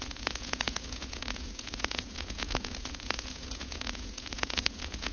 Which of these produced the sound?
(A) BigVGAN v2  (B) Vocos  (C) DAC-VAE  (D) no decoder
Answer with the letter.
B